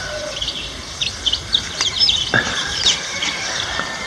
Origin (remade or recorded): remade